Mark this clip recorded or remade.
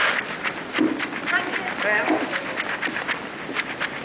recorded